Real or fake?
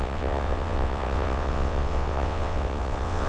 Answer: fake